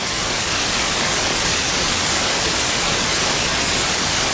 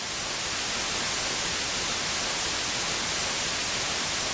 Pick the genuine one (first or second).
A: second